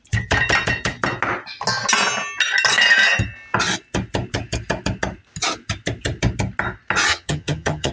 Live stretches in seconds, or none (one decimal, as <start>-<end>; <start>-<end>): 0.0-7.1